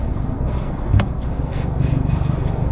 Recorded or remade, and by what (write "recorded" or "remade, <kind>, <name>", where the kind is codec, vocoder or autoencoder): remade, codec, SNAC